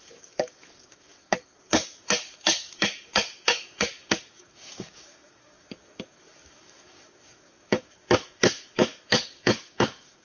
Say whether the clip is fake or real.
fake